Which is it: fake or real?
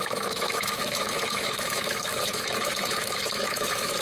fake